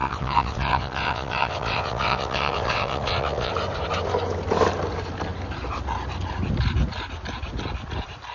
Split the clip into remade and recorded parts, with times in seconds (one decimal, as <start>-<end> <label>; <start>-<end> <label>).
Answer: 0.0-3.5 remade; 3.5-8.3 recorded